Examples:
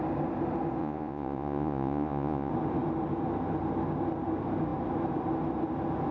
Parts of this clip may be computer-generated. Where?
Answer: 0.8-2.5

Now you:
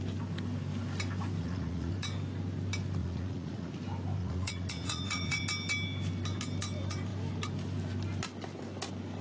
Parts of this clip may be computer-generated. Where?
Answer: 1.4-1.9; 3.0-3.7; 4.2-5.4

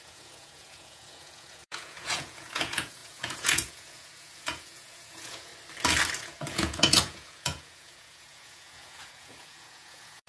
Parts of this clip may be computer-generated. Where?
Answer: 0.0-5.5; 6.2-10.3

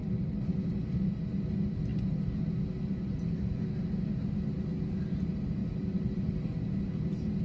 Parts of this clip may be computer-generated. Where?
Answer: none

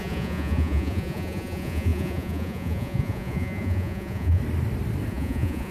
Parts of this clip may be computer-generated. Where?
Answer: 0.0-4.4; 5.1-5.7

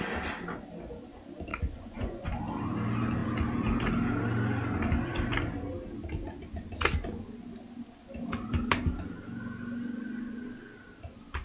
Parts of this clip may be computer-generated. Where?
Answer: 1.5-2.4